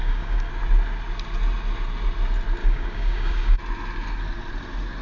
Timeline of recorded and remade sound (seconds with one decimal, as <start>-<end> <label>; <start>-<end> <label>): 0.0-0.5 remade; 0.5-2.6 recorded; 2.6-3.6 remade; 3.6-5.0 recorded